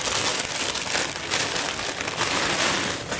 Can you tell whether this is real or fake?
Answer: real